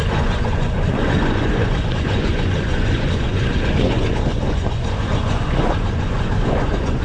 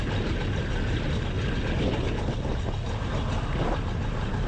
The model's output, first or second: first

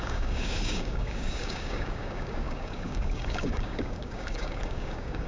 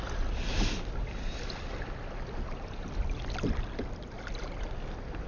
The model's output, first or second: first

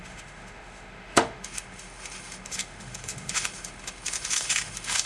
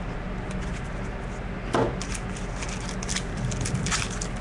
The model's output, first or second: first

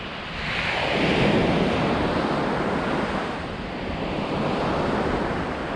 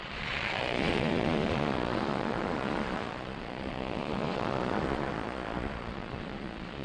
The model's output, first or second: second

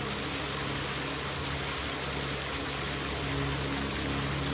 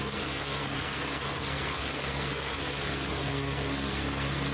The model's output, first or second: second